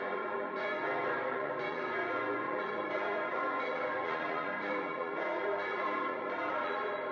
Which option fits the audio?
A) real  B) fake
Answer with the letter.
B